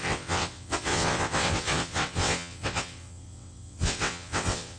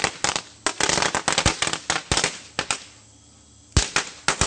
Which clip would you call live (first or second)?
second